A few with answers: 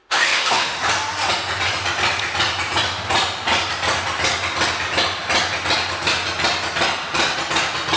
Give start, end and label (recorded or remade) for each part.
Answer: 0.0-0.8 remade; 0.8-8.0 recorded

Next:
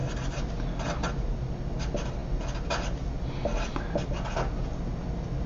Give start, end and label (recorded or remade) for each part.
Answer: 0.0-5.5 recorded